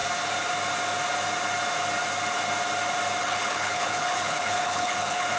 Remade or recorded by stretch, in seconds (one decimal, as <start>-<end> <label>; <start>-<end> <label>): 0.0-3.2 recorded; 3.2-5.4 remade